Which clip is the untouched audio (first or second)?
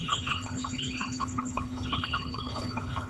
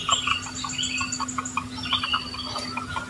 second